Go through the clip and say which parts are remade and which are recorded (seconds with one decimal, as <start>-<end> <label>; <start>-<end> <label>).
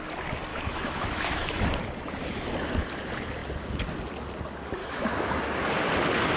0.0-0.5 recorded; 0.5-1.6 remade; 1.6-4.8 recorded; 4.8-5.4 remade; 5.4-6.4 recorded